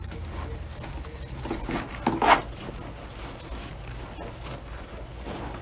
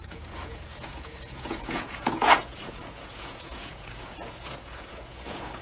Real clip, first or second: first